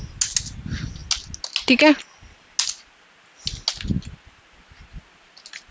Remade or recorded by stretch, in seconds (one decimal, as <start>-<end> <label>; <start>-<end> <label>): 0.0-5.7 recorded